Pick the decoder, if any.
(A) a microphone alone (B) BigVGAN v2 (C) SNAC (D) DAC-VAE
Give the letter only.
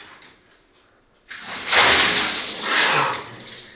A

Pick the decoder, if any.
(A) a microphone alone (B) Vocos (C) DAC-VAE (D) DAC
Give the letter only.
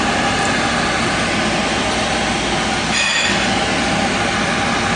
A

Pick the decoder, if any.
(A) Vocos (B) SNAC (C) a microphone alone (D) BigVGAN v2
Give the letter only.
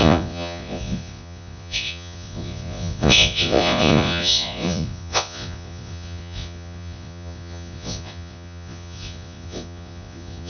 A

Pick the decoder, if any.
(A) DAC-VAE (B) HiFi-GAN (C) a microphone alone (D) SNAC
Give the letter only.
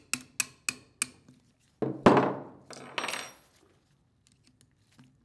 C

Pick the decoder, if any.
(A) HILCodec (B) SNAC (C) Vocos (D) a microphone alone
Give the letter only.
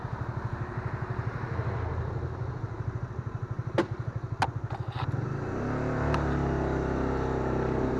D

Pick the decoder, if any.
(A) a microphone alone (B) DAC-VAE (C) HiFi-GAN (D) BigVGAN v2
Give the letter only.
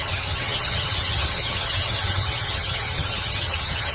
C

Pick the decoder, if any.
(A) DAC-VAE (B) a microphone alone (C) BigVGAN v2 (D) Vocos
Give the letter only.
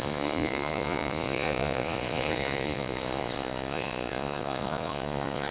D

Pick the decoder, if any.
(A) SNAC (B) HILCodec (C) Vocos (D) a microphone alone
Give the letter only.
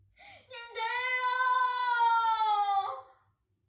D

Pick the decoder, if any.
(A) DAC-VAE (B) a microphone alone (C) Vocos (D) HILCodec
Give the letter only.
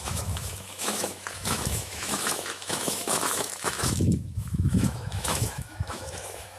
A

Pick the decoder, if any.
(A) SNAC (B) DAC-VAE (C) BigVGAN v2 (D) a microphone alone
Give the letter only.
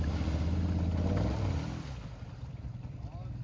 D